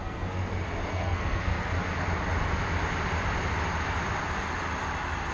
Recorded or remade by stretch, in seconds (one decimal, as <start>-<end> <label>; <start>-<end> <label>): 0.0-0.4 remade; 0.4-0.9 recorded; 0.9-1.7 remade; 1.7-5.3 recorded